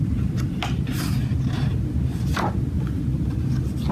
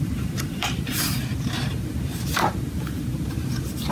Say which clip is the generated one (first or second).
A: second